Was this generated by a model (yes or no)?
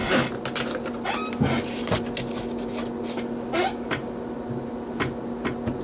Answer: no